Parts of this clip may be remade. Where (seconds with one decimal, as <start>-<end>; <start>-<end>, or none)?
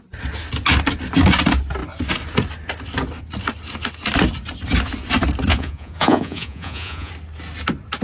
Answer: 5.5-7.1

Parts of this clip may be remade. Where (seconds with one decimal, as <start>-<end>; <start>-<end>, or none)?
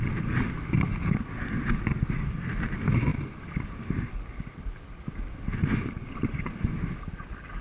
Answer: none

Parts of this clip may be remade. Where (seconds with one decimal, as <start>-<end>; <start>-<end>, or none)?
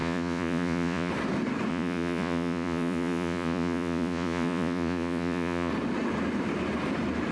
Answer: 0.0-1.1; 1.7-5.7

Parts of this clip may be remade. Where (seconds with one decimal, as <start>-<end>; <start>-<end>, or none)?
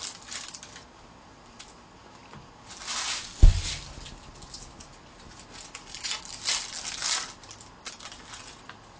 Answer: none